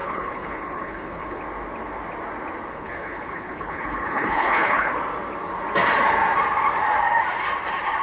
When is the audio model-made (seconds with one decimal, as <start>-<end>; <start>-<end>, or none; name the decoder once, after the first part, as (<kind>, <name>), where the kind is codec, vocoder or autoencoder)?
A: 0.0-1.4 (codec, HILCodec); 2.7-4.9